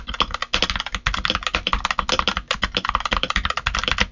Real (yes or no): yes